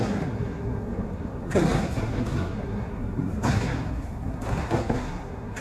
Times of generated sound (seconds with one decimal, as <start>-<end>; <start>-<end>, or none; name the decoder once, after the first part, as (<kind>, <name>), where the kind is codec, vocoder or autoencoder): 0.0-5.6 (codec, SNAC)